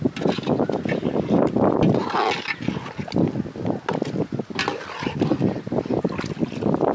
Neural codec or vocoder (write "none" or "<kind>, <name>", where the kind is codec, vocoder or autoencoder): none